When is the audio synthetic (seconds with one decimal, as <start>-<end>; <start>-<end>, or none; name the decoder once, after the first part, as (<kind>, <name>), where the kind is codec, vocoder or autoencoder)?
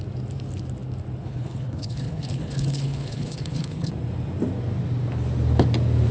1.2-3.9 (codec, HILCodec)